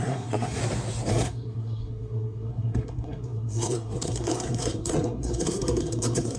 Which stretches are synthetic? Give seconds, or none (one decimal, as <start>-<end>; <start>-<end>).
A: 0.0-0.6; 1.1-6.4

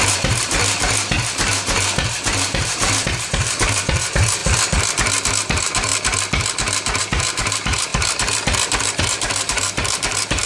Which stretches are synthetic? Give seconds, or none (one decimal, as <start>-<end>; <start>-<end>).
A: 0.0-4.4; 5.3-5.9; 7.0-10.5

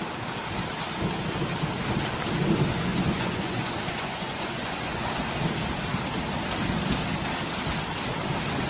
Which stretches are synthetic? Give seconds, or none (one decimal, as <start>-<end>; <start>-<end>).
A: 2.7-5.1